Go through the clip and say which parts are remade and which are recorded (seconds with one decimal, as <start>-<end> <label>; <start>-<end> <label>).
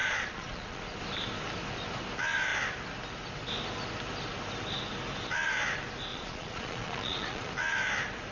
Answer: 0.0-0.8 remade; 0.8-6.1 recorded; 6.1-7.5 remade; 7.5-8.3 recorded